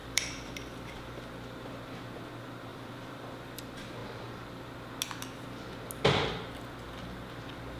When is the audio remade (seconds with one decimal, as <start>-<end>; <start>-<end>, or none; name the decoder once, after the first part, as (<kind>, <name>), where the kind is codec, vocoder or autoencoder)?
0.0-1.2 (vocoder, BigVGAN v2); 2.7-3.3